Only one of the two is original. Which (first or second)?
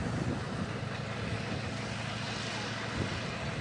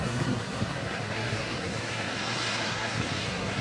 first